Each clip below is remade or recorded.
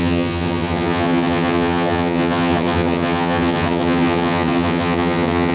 remade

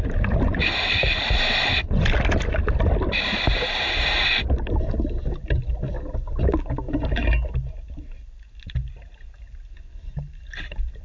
recorded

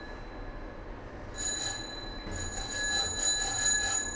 recorded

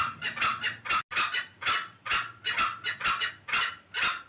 recorded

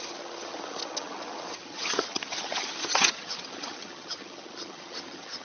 remade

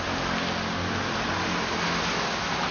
recorded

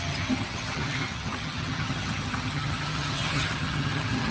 remade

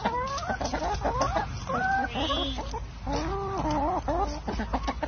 recorded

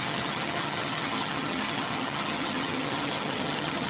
remade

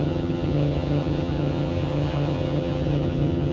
remade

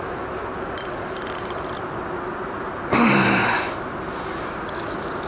recorded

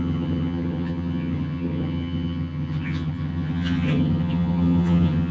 remade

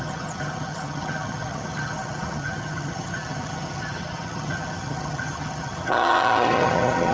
remade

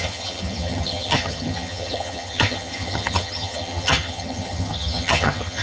remade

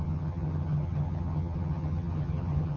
remade